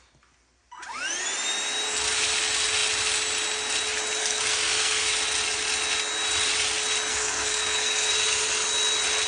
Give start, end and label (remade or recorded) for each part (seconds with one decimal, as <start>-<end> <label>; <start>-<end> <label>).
0.0-4.2 recorded; 4.2-5.1 remade; 5.1-7.1 recorded; 7.1-8.1 remade; 8.1-9.3 recorded